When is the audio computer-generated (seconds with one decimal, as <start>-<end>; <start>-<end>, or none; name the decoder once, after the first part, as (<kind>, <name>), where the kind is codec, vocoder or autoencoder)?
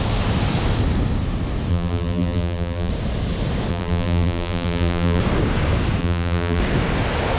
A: 1.7-2.9 (vocoder, BigVGAN v2); 3.7-5.2; 6.0-6.6